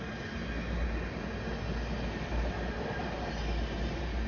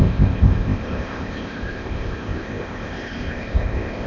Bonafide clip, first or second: first